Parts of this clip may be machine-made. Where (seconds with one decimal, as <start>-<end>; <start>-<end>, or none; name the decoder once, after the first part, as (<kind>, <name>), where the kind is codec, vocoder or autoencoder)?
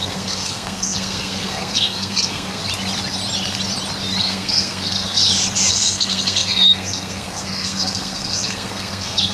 0.0-2.6 (codec, SNAC); 4.2-5.2; 5.7-9.3